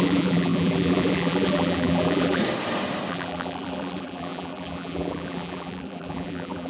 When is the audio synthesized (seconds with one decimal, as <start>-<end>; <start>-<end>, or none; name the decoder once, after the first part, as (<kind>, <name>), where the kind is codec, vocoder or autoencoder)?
0.0-2.4 (vocoder, BigVGAN v2); 3.1-6.7